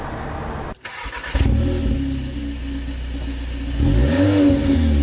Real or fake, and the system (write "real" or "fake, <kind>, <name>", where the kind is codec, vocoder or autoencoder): real